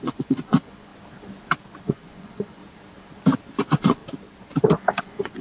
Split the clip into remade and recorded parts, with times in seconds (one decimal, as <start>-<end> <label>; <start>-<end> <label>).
0.0-0.9 remade; 0.9-1.8 recorded; 1.8-2.6 remade; 2.6-3.6 recorded; 3.6-4.0 remade; 4.0-5.0 recorded; 5.0-5.4 remade